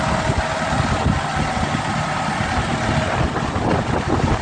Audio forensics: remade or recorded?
recorded